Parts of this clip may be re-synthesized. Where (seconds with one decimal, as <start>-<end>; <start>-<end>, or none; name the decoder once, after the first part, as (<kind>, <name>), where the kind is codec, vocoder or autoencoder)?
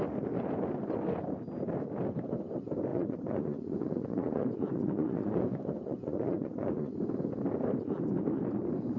2.9-6.9 (vocoder, Vocos)